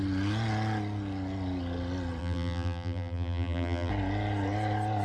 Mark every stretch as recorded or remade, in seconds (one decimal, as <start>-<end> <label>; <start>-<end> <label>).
0.0-2.2 recorded; 2.2-3.9 remade; 3.9-5.0 recorded